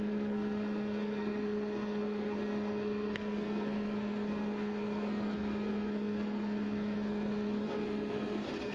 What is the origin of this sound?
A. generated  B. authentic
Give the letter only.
A